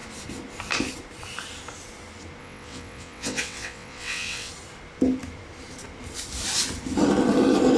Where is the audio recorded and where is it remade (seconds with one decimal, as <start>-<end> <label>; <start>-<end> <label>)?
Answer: 0.0-2.4 recorded; 2.4-4.5 remade; 4.5-7.8 recorded